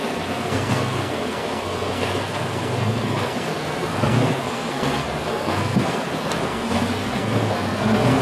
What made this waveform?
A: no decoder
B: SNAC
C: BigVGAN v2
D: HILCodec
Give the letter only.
B